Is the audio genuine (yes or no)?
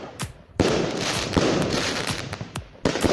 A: no